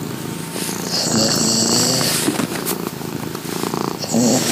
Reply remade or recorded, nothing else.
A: recorded